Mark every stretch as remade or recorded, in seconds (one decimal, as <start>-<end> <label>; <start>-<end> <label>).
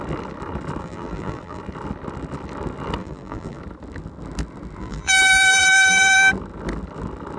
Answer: 0.0-0.8 recorded; 0.8-1.6 remade; 1.6-3.0 recorded; 3.0-3.6 remade; 3.6-4.8 recorded; 4.8-6.3 remade; 6.3-7.4 recorded